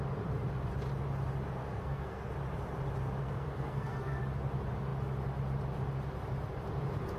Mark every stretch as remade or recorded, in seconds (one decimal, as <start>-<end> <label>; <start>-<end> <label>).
0.0-1.6 recorded; 1.6-2.3 remade; 2.3-3.2 recorded; 3.2-4.2 remade; 4.2-7.2 recorded